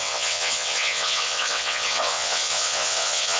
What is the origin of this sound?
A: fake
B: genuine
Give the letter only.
A